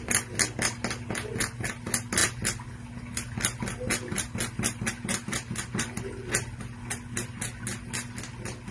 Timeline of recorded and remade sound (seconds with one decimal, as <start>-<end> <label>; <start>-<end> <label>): 0.0-8.7 recorded